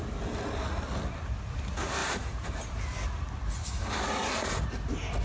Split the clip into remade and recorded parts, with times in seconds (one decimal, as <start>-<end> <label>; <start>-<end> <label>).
0.0-2.0 recorded; 2.0-2.8 remade; 2.8-5.2 recorded

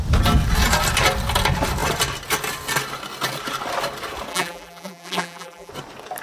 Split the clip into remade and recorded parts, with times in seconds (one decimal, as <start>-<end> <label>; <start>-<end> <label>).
0.0-4.3 recorded; 4.3-5.7 remade; 5.7-6.2 recorded

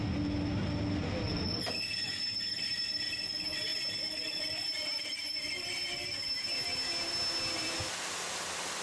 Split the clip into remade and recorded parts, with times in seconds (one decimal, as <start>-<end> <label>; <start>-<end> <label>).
0.0-8.8 recorded